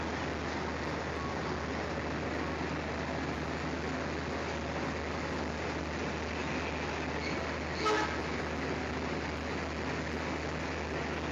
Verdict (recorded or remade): recorded